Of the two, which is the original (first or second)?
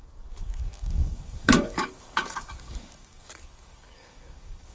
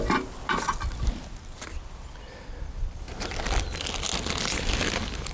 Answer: second